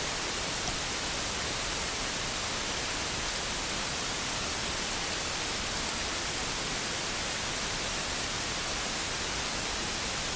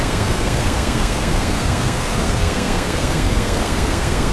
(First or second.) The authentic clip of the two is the first